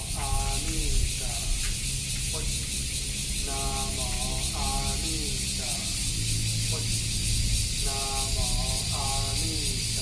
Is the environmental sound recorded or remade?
recorded